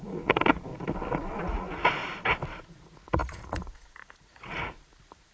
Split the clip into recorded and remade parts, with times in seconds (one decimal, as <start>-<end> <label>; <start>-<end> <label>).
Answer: 0.0-0.7 remade; 0.7-1.4 recorded; 1.4-2.0 remade; 2.0-2.6 recorded; 2.6-5.3 remade